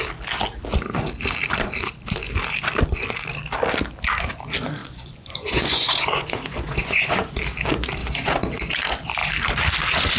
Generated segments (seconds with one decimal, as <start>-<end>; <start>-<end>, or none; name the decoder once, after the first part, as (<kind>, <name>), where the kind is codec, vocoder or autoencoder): 4.8-7.4 (vocoder, Vocos); 8.0-8.7